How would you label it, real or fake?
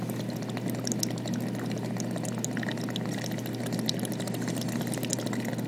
real